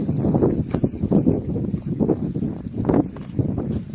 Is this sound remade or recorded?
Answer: recorded